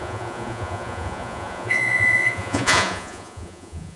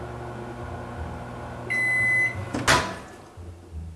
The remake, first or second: first